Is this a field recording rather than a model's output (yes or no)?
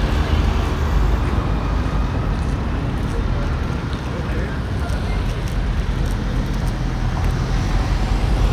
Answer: yes